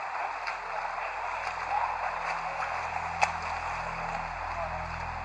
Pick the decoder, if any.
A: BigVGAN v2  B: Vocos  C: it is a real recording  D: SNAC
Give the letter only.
C